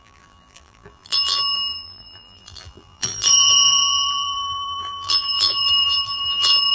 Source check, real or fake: fake